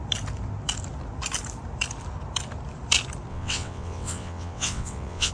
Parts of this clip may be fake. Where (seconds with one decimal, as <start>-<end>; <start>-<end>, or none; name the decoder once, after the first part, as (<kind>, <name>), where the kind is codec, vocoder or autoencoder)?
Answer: 3.3-5.3 (vocoder, WaveNeXt)